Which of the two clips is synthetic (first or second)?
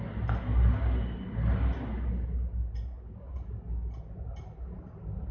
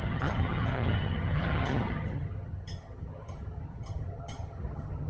second